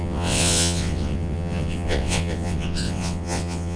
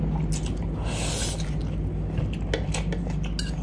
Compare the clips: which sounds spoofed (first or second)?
first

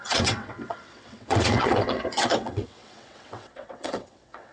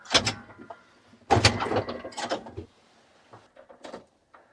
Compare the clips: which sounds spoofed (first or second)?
first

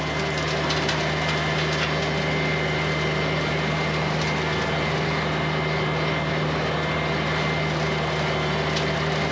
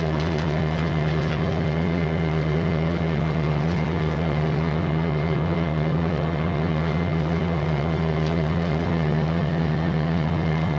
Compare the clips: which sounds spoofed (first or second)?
second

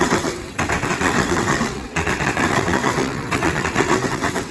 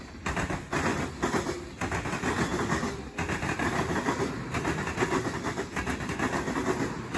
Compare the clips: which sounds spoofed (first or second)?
first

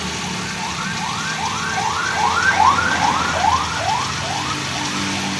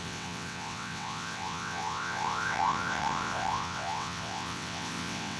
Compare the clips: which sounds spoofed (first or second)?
second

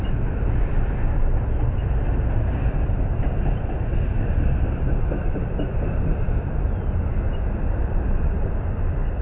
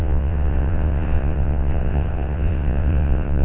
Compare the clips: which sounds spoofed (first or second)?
second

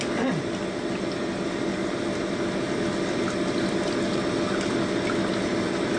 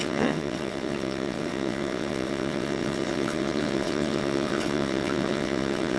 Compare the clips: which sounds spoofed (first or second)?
second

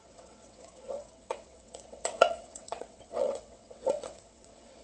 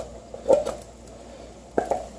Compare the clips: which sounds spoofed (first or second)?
first